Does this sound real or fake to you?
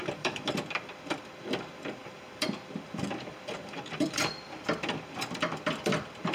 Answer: fake